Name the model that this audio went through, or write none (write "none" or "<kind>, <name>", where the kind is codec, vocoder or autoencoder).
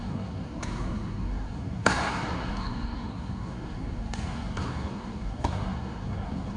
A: codec, SNAC